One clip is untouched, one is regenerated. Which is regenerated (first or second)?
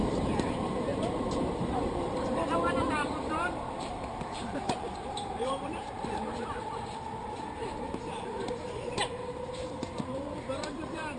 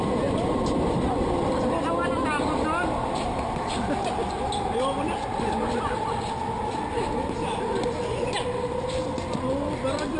first